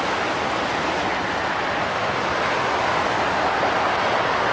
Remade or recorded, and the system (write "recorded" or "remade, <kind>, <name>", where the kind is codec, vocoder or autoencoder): recorded